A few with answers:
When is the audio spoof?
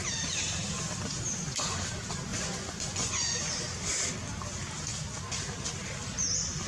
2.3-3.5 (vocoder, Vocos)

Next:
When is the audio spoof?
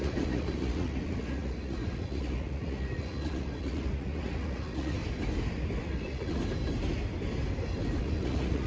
0.0-5.0 (vocoder, Vocos); 5.8-6.4; 8.0-8.7